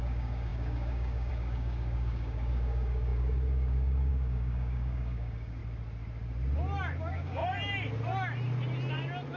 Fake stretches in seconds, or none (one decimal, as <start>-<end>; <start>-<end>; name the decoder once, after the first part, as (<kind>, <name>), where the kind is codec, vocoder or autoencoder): 0.0-5.6 (codec, DAC); 7.0-7.4